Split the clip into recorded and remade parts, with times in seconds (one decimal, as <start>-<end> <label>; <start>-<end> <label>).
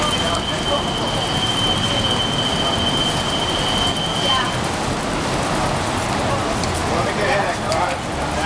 0.0-8.5 recorded